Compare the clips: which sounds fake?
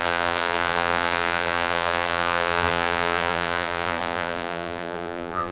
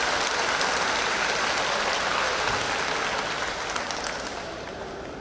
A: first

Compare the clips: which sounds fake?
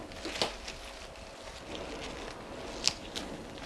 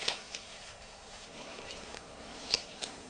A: second